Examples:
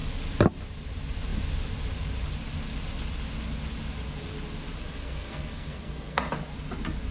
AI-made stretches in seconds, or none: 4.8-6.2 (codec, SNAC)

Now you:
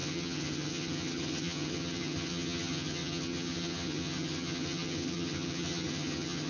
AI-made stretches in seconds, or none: 0.0-6.5 (vocoder, HiFi-GAN)